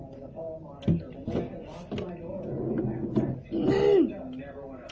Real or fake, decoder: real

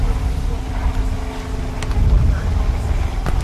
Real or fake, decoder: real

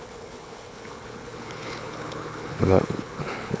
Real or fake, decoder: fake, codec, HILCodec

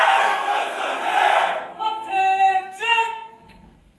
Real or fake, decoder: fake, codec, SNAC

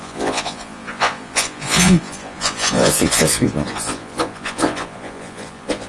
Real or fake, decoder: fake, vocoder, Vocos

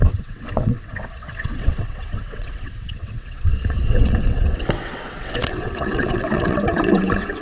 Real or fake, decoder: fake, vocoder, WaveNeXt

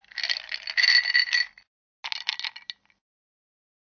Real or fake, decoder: real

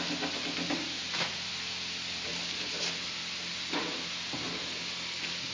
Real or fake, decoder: real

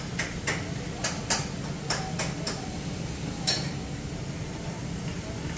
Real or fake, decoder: real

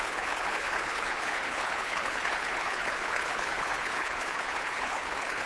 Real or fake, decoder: fake, codec, HILCodec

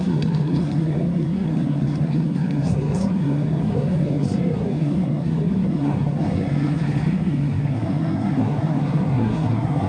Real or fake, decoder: fake, codec, SNAC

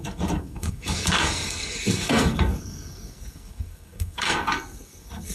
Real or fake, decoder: fake, codec, SNAC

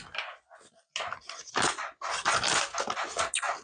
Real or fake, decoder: real